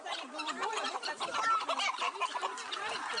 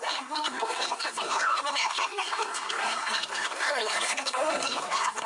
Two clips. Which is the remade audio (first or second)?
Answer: second